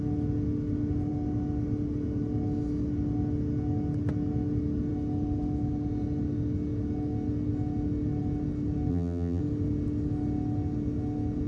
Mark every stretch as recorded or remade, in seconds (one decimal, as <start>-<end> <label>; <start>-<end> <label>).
0.0-8.9 recorded; 8.9-9.4 remade; 9.4-11.5 recorded